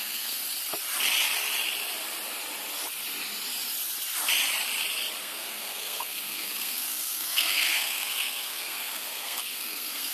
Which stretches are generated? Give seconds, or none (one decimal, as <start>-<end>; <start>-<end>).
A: 0.0-0.4; 5.2-10.1

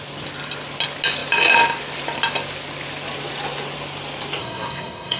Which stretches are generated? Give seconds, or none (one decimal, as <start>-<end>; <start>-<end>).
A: 4.4-5.2